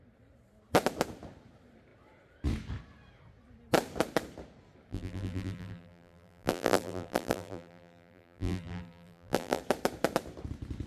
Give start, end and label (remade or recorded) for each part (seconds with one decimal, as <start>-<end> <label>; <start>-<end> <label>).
0.0-4.9 recorded; 4.9-9.6 remade; 9.6-10.9 recorded